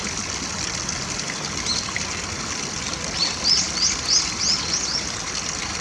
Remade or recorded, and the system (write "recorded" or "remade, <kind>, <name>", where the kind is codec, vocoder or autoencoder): recorded